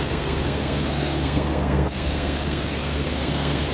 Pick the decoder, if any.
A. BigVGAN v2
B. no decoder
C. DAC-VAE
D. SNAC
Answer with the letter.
D